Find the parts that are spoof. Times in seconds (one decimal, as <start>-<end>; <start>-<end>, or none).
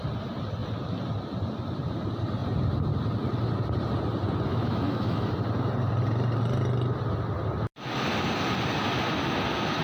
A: 4.5-5.3